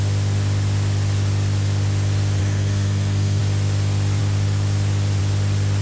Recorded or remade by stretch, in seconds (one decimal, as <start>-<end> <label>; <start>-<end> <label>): 0.0-2.4 recorded; 2.4-3.4 remade; 3.4-5.8 recorded